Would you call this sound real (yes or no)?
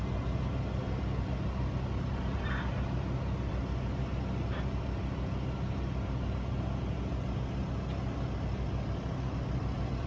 yes